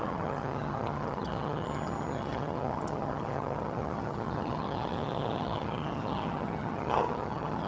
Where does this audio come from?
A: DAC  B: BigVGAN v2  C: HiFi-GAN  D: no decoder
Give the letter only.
C